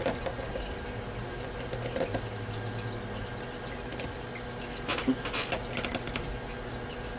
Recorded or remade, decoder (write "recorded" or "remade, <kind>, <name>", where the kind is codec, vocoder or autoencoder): recorded